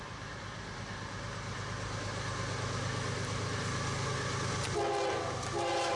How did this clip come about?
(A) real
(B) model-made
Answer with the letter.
A